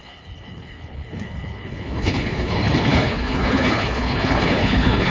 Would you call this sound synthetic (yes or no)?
yes